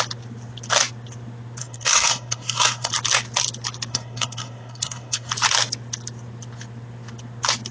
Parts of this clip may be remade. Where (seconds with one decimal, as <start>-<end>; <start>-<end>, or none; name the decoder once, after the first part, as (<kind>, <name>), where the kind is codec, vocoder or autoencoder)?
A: 1.6-2.9 (codec, SNAC); 3.9-5.3